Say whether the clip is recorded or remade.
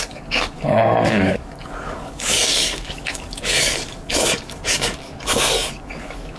remade